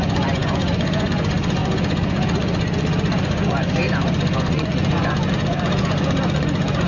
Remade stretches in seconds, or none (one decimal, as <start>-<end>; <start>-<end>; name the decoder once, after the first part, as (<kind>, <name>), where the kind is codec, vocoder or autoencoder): 0.0-6.9 (vocoder, Vocos)